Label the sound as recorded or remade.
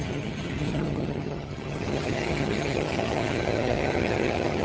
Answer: remade